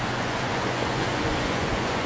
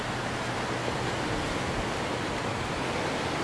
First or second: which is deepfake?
first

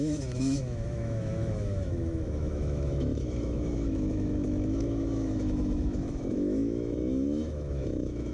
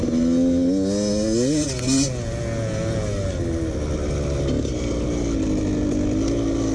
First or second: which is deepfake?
first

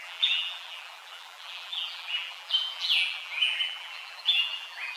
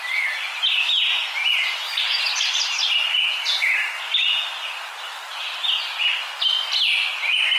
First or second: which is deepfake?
first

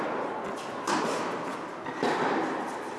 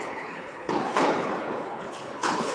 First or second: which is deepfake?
second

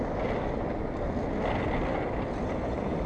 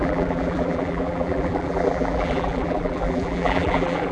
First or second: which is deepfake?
second